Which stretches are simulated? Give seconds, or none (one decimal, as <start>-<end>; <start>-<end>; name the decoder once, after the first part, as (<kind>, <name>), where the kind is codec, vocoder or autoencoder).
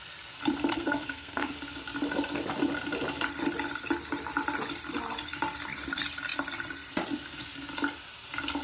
0.7-1.5 (codec, SNAC)